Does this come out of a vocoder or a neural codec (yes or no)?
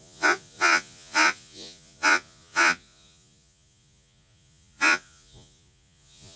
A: yes